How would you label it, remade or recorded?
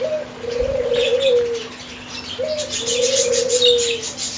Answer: recorded